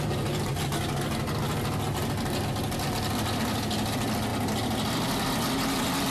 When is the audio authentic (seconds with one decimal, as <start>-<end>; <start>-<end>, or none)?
0.0-6.1